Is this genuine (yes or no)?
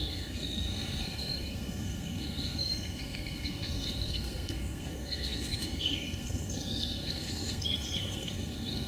no